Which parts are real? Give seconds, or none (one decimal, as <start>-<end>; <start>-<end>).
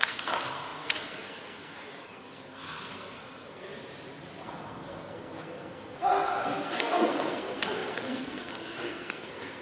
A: 3.7-4.4